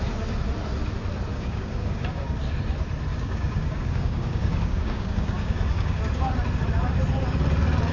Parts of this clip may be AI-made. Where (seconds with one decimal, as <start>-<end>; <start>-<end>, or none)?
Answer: 1.3-2.4; 3.1-6.0